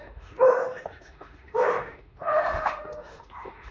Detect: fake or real fake